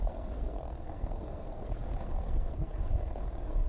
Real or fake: fake